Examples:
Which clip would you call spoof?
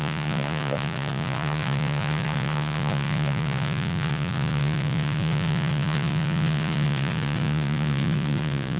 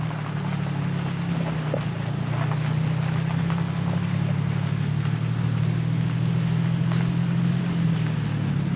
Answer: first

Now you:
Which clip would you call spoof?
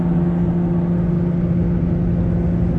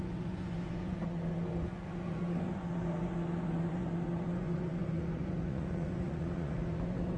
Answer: second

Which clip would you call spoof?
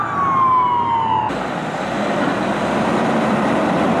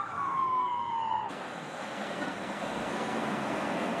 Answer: second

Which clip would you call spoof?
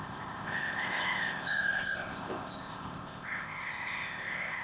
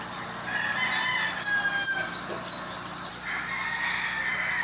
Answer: first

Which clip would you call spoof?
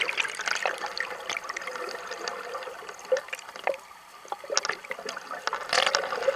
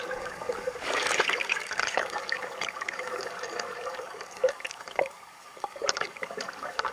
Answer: second